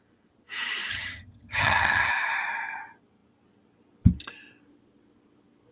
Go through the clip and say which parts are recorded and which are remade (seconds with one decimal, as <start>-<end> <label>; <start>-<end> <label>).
0.0-0.9 recorded; 0.9-2.1 remade; 2.1-5.7 recorded